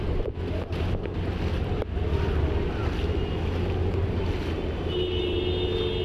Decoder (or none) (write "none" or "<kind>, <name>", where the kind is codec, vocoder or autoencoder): none